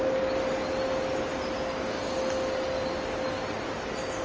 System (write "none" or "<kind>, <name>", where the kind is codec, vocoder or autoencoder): none